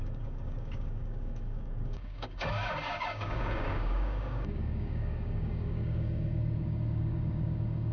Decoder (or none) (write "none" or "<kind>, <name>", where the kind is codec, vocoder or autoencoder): codec, DAC